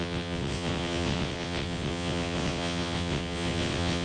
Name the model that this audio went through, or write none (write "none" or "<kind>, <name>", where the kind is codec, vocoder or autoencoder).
vocoder, WaveNeXt